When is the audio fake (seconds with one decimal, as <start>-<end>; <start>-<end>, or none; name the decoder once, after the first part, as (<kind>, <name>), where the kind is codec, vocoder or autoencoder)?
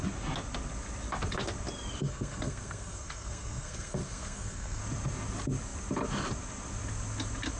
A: 2.0-4.8 (codec, SNAC)